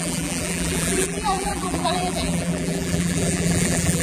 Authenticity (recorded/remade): remade